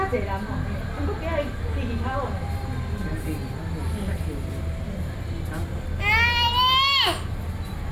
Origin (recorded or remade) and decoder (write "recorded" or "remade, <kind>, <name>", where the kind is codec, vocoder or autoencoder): recorded